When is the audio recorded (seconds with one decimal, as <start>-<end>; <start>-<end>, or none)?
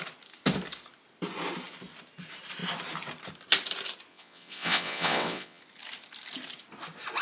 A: 0.0-4.1; 5.6-7.2